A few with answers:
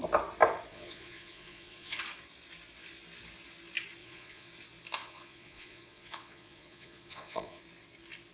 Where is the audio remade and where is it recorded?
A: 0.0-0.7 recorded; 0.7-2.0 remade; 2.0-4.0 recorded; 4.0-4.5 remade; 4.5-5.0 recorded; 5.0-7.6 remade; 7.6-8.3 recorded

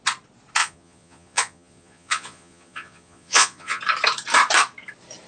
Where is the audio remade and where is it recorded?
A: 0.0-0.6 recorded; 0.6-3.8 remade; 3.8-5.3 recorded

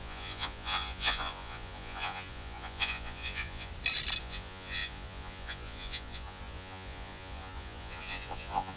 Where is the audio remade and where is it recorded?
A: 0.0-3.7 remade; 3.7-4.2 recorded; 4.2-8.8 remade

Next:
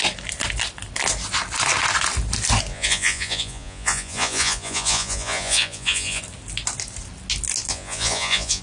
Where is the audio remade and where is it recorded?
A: 0.0-2.7 recorded; 2.7-6.2 remade; 6.2-7.7 recorded; 7.7-8.6 remade

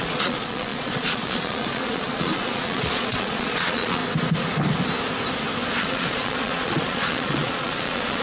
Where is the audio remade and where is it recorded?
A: 0.0-4.0 remade; 4.0-5.8 recorded; 5.8-8.2 remade

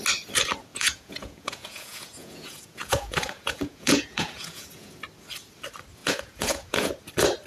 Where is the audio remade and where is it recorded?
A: 0.0-0.7 recorded; 0.7-4.9 remade; 4.9-6.0 recorded; 6.0-6.9 remade; 6.9-7.5 recorded

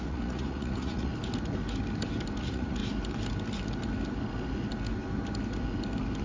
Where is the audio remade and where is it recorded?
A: 0.0-1.1 remade; 1.1-2.4 recorded; 2.4-2.8 remade; 2.8-6.2 recorded